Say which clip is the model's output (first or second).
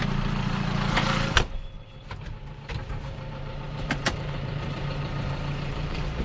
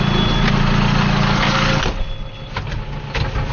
first